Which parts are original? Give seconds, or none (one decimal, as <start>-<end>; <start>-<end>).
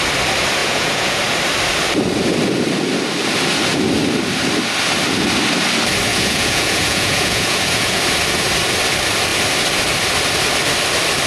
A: 0.0-0.6; 1.2-6.1; 8.0-11.3